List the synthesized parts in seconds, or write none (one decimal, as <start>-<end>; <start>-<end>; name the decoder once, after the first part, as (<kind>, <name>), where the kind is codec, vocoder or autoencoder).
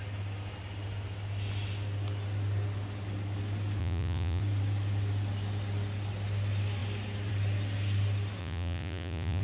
3.8-4.4 (vocoder, Vocos); 8.4-9.4